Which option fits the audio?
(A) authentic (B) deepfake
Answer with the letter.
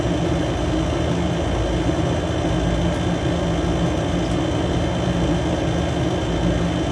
A